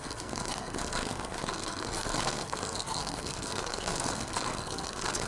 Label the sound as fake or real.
fake